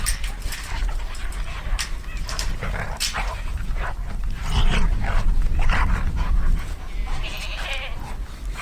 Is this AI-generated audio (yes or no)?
yes